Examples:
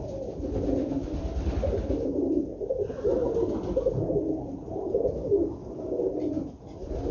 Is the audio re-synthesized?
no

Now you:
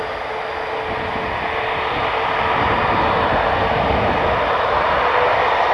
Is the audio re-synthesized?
no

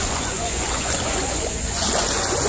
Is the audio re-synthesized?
yes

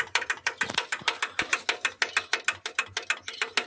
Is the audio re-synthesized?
no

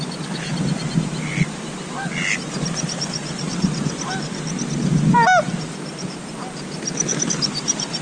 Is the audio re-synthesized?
no